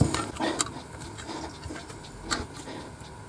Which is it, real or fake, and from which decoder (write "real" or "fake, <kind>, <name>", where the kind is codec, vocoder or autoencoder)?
real